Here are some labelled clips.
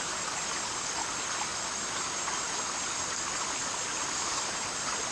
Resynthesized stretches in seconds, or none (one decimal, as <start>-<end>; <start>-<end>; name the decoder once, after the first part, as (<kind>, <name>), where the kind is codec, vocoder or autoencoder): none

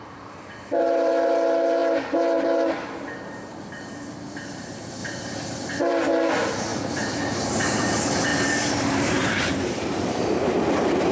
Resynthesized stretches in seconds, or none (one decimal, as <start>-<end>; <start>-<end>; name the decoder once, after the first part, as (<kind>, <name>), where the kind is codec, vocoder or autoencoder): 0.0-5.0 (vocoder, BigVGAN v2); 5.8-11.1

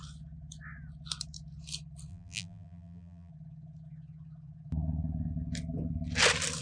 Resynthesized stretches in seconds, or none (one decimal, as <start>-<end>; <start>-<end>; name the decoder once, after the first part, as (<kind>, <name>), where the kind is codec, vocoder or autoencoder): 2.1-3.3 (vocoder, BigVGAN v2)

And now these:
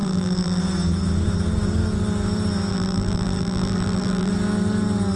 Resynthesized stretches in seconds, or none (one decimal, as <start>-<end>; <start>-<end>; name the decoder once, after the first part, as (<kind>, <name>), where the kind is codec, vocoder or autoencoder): 0.0-0.6 (vocoder, BigVGAN v2); 2.7-4.3

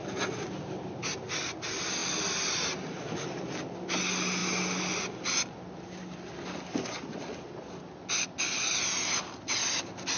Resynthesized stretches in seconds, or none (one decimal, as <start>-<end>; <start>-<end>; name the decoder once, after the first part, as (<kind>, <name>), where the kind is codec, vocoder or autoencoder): none

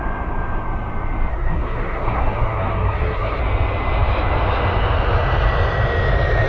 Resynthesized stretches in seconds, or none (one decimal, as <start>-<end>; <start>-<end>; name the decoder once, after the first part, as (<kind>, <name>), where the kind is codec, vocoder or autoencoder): 1.3-3.4 (codec, SNAC)

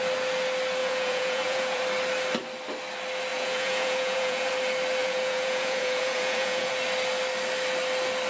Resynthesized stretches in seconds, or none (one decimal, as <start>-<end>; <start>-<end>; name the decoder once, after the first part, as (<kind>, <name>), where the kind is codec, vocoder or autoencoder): 0.8-1.8 (vocoder, Vocos); 3.3-4.5; 5.0-6.7

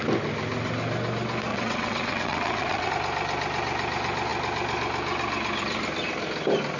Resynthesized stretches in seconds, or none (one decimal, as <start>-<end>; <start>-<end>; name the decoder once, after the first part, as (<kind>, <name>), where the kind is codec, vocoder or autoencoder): 1.5-2.9 (vocoder, WaveNeXt)